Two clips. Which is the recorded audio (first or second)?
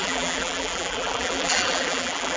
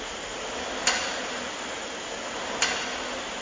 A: second